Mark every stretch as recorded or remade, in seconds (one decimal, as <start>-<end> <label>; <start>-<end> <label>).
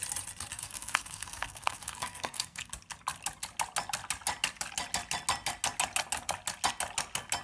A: 0.0-0.5 recorded; 0.5-2.7 remade; 2.7-7.4 recorded